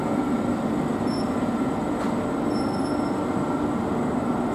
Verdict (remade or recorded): recorded